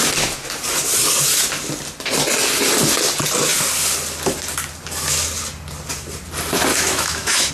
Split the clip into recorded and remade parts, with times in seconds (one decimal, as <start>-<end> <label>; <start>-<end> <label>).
0.0-6.7 recorded; 6.7-7.5 remade